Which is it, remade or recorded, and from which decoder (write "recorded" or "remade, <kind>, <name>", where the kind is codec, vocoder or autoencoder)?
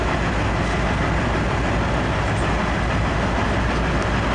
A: recorded